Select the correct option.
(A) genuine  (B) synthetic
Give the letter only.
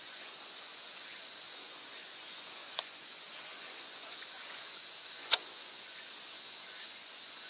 B